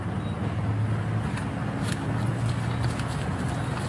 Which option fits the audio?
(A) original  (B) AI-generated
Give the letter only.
A